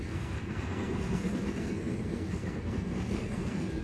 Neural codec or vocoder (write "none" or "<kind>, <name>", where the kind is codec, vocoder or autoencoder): codec, SNAC